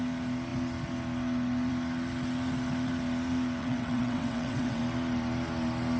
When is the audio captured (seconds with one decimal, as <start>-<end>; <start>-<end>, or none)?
0.0-3.6; 4.8-6.0